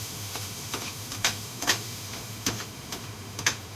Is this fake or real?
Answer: fake